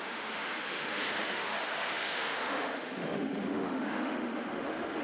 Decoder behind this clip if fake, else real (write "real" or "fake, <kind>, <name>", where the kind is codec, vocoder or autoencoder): fake, autoencoder, DAC-VAE